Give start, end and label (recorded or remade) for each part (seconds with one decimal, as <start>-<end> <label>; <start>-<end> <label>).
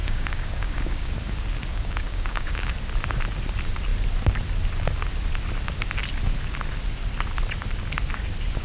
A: 0.0-1.1 remade; 1.1-1.7 recorded; 1.7-2.7 remade; 2.7-8.6 recorded